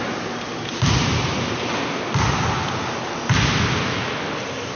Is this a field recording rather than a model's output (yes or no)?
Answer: yes